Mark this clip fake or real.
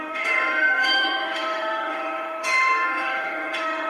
fake